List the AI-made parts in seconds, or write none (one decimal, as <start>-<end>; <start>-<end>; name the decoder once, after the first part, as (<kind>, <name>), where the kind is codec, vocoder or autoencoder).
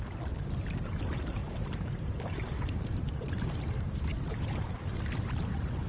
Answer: 1.4-4.9 (vocoder, BigVGAN v2)